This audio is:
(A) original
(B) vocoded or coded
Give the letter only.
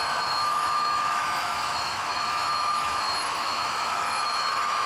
B